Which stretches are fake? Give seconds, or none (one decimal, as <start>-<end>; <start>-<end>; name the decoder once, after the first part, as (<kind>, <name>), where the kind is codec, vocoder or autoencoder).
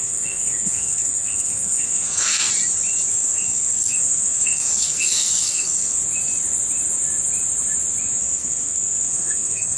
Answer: 0.0-2.5 (codec, SNAC); 3.1-6.0; 8.2-9.8